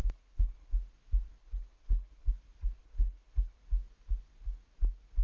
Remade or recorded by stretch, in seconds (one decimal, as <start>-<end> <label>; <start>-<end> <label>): 0.0-0.7 remade; 0.7-1.4 recorded; 1.4-2.3 remade; 2.3-2.8 recorded; 2.8-3.6 remade; 3.6-5.2 recorded